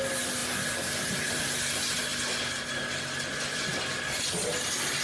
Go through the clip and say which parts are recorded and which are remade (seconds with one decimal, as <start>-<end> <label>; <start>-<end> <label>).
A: 0.0-5.0 recorded